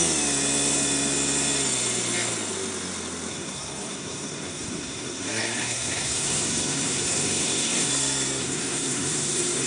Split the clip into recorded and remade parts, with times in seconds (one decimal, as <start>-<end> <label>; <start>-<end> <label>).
0.0-3.3 recorded; 3.3-7.9 remade; 7.9-8.4 recorded; 8.4-9.7 remade